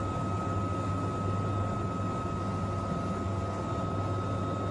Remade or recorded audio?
recorded